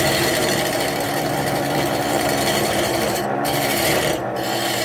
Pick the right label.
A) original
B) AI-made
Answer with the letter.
B